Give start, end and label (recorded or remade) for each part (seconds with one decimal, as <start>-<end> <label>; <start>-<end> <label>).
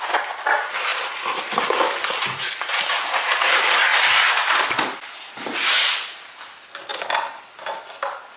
0.0-8.4 recorded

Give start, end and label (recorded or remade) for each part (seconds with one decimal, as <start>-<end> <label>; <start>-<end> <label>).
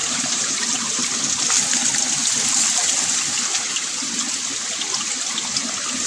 0.0-1.2 remade; 1.2-6.1 recorded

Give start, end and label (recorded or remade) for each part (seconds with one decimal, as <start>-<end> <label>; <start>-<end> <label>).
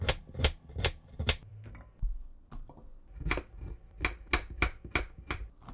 0.0-5.7 recorded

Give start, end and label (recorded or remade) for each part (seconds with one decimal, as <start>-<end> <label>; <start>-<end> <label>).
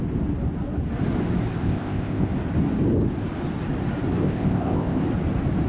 0.0-1.6 recorded; 1.6-2.3 remade; 2.3-4.2 recorded; 4.2-5.0 remade; 5.0-5.7 recorded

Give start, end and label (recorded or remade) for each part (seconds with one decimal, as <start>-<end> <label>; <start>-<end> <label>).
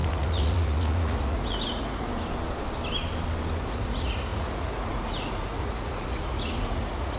0.0-2.1 remade; 2.1-3.6 recorded; 3.6-7.2 remade